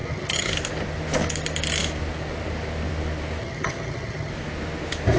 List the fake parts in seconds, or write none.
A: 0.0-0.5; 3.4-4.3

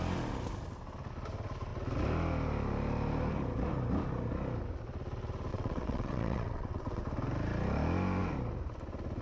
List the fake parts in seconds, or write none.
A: 5.5-7.0